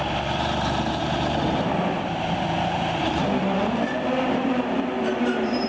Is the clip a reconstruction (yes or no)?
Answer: yes